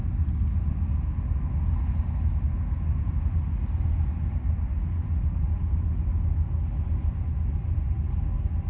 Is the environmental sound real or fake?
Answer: real